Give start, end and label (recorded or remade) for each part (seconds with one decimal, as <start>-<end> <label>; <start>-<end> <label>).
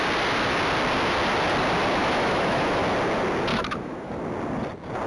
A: 0.0-2.0 recorded; 2.0-2.8 remade; 2.8-3.5 recorded; 3.5-4.1 remade; 4.1-5.1 recorded